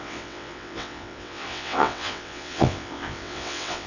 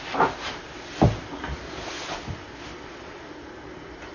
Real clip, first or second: second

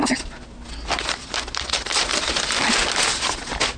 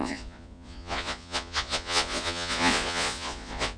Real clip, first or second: first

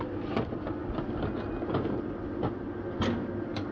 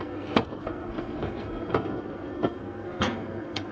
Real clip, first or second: first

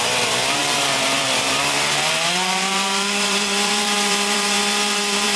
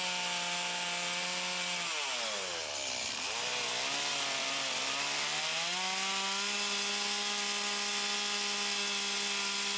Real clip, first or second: second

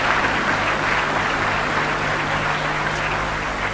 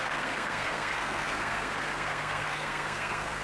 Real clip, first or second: first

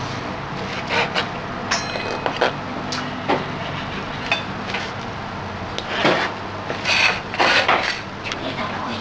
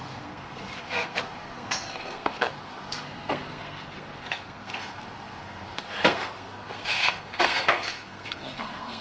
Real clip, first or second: first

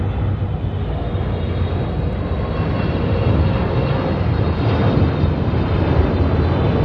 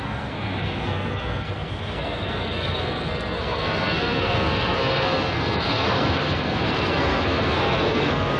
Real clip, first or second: first